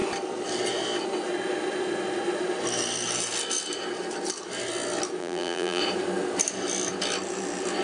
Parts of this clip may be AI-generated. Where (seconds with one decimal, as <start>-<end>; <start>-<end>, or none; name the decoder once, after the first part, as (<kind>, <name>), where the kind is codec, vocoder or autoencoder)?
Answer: 5.2-5.8 (vocoder, BigVGAN v2)